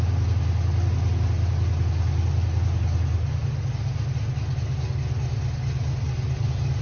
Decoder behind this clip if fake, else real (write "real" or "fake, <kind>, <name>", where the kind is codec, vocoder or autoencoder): real